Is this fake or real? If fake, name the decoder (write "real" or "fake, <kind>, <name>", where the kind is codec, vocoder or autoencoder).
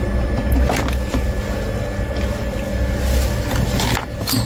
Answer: real